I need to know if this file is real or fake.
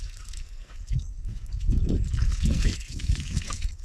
fake